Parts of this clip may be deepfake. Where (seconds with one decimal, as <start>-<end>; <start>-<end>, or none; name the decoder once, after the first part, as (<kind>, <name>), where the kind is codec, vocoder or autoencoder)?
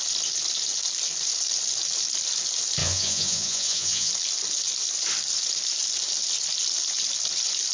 2.8-4.1 (vocoder, Vocos)